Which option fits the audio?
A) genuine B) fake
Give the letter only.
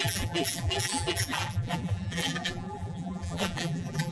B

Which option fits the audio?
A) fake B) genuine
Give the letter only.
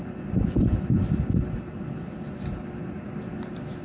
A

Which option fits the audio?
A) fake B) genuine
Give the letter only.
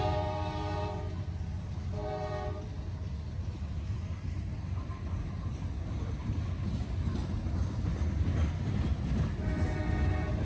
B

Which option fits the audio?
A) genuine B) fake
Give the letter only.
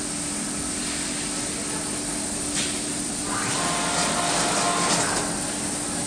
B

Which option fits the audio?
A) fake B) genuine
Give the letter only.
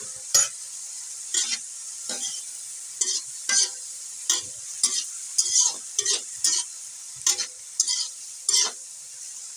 B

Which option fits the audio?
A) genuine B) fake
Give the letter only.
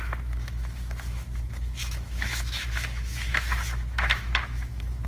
B